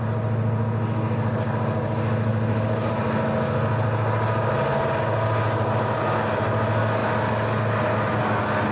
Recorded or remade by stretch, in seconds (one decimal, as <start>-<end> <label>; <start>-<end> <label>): 0.0-2.3 recorded; 2.3-2.9 remade; 2.9-8.7 recorded